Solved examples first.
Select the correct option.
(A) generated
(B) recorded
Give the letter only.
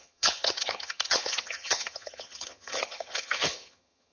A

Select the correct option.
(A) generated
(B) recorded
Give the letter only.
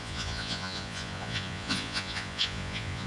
A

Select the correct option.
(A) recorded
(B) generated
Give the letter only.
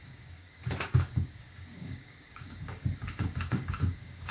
B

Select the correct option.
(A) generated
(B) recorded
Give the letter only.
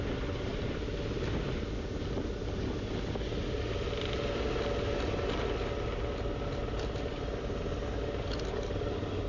B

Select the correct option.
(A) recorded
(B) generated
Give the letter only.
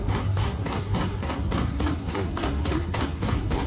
B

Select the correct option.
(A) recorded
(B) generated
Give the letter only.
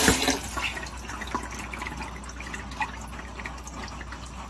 A